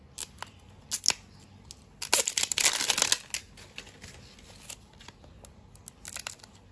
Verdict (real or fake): real